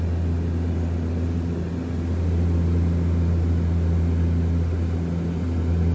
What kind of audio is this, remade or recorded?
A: recorded